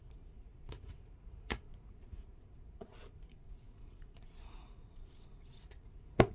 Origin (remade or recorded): remade